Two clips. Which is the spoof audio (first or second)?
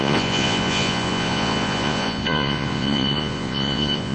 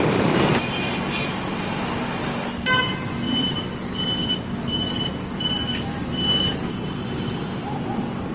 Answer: first